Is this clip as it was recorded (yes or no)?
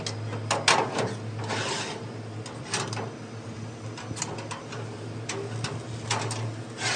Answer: yes